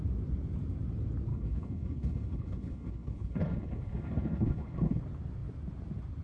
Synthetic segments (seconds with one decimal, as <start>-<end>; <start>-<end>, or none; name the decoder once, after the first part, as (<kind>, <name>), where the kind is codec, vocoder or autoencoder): 1.3-5.0 (codec, HILCodec)